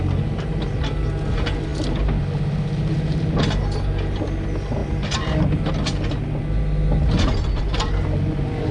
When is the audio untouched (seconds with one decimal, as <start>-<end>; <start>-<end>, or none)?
0.0-8.7